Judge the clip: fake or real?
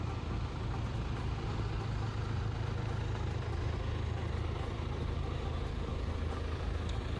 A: real